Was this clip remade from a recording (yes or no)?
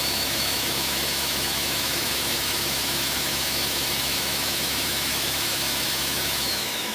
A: yes